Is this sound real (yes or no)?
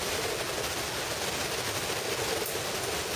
yes